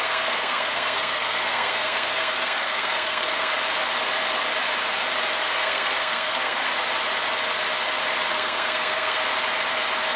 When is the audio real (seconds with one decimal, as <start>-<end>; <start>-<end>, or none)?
3.5-5.4; 6.8-8.3; 9.2-10.2